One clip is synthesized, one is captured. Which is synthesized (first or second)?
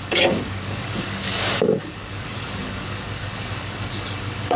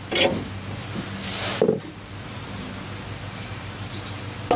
first